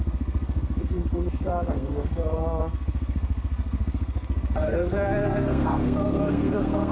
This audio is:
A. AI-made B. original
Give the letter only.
A